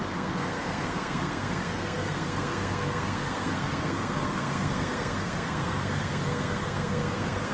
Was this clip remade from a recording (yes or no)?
yes